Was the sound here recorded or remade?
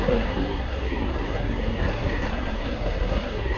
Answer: remade